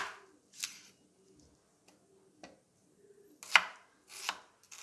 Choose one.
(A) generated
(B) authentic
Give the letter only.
B